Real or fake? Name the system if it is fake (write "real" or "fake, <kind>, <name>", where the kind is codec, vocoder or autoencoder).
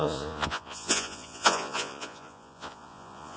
fake, vocoder, Vocos